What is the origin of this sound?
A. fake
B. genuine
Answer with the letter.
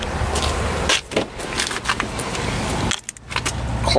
B